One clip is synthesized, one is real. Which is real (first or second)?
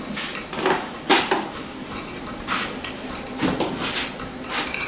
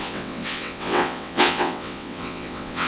first